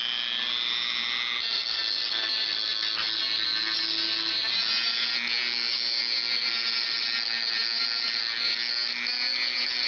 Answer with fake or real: real